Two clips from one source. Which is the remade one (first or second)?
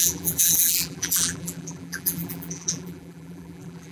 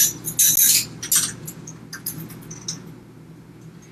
first